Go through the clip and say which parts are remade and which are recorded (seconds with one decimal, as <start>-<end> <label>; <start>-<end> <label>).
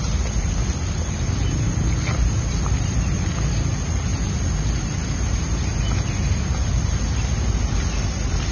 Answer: 0.0-8.5 recorded